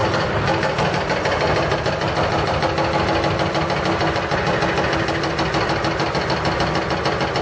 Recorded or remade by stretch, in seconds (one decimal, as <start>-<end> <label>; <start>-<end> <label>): 0.0-7.4 recorded